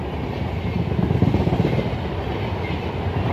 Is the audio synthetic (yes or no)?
no